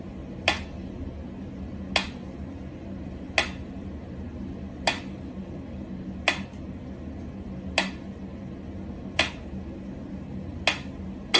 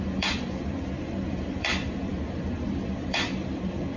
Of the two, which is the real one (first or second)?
first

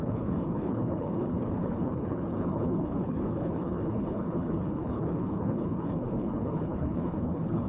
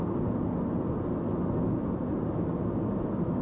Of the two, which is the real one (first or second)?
second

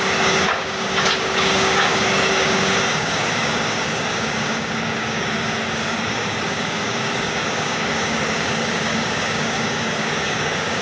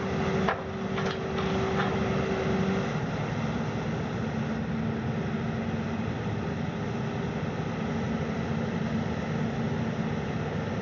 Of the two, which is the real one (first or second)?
second